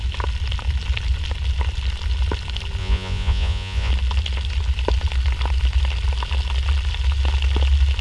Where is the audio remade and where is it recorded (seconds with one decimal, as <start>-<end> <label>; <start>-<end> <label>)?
0.0-2.8 recorded; 2.8-3.9 remade; 3.9-8.0 recorded